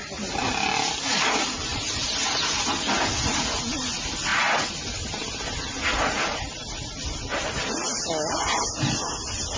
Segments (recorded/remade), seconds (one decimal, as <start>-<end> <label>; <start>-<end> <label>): 0.0-9.6 recorded